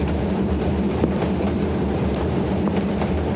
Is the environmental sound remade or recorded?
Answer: recorded